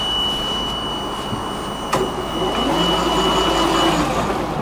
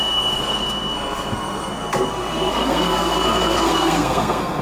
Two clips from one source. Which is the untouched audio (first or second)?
first